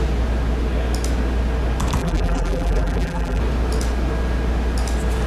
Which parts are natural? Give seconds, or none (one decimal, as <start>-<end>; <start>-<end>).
0.0-2.0; 3.4-5.3

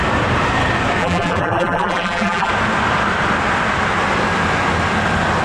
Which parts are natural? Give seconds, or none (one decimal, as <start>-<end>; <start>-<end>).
0.0-1.0; 2.5-5.4

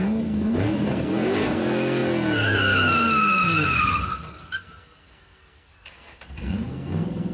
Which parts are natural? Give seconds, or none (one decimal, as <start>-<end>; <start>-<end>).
none

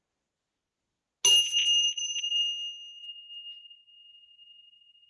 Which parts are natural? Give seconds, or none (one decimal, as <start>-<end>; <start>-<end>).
0.0-2.5; 3.0-5.1

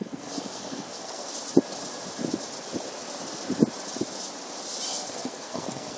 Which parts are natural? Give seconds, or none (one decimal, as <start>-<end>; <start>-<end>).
1.3-4.9

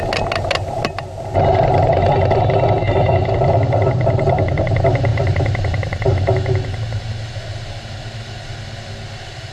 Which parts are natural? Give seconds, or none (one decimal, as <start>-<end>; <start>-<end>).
0.0-5.1; 6.1-9.5

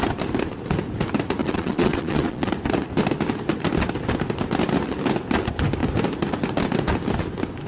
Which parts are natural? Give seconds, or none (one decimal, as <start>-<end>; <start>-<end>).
0.0-1.4; 2.5-7.7